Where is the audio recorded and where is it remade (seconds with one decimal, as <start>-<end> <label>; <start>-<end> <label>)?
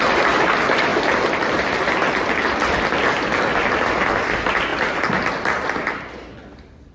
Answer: 0.0-6.9 recorded